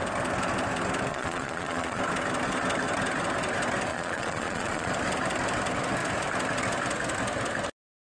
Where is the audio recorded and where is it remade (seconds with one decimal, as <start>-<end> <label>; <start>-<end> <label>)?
0.0-1.1 recorded; 1.1-2.0 remade; 2.0-3.9 recorded; 3.9-4.9 remade; 4.9-8.0 recorded